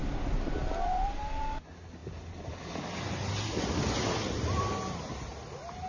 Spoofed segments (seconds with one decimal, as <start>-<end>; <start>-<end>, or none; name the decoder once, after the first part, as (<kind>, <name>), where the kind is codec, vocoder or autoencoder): none